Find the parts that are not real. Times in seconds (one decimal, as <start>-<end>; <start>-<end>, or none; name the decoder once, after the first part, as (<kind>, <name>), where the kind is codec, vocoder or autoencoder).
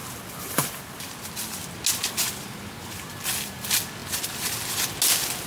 none